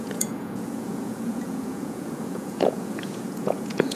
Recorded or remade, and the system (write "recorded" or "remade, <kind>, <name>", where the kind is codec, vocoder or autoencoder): remade, vocoder, Vocos